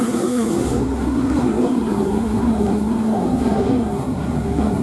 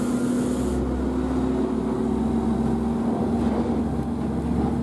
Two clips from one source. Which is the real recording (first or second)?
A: second